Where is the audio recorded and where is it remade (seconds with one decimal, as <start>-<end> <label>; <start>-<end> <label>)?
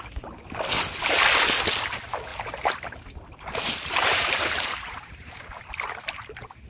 0.0-2.3 recorded; 2.3-5.6 remade; 5.6-6.7 recorded